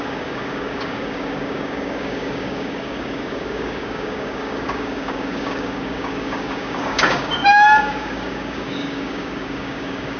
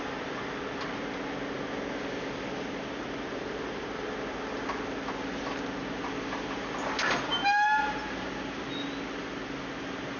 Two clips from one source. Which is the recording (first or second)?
second